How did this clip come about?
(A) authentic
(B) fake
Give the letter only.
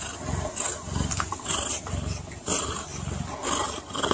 A